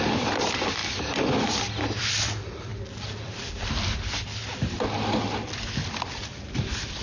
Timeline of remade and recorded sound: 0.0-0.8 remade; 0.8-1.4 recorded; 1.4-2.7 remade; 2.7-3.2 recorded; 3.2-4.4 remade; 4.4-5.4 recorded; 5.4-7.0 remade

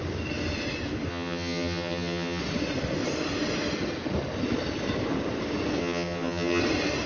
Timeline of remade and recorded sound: 0.0-1.1 recorded; 1.1-2.4 remade; 2.4-5.8 recorded; 5.8-6.6 remade; 6.6-7.1 recorded

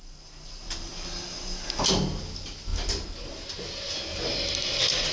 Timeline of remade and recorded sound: 0.0-5.1 recorded